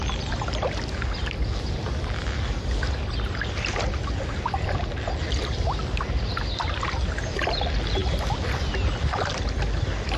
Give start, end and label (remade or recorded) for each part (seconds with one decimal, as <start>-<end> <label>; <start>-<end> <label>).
0.0-10.2 recorded